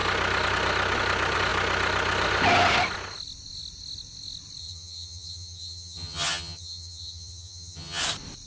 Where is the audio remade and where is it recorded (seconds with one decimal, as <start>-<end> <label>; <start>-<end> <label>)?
0.0-4.6 recorded; 4.6-8.0 remade; 8.0-8.5 recorded

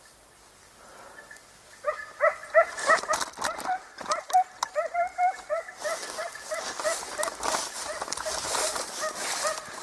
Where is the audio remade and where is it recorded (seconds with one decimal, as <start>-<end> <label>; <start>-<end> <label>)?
0.0-9.8 recorded

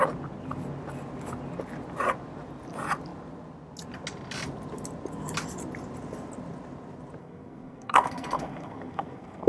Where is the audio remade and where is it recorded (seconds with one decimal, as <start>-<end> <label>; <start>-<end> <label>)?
0.0-7.2 recorded; 7.2-9.5 remade

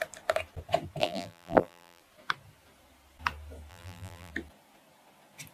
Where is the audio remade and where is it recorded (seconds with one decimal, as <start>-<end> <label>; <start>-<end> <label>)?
0.0-1.0 recorded; 1.0-2.0 remade; 2.0-3.7 recorded; 3.7-4.3 remade; 4.3-5.5 recorded

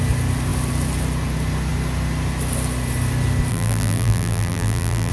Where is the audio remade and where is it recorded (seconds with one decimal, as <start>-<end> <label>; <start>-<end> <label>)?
0.0-3.5 recorded; 3.5-5.1 remade

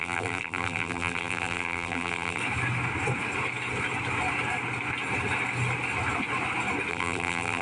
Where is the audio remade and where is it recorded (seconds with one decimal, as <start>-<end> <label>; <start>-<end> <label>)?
0.0-2.4 remade; 2.4-6.9 recorded; 6.9-7.6 remade

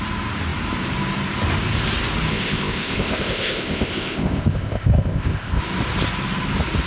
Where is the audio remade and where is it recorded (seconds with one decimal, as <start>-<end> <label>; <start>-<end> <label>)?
0.0-2.3 recorded; 2.3-5.6 remade; 5.6-6.9 recorded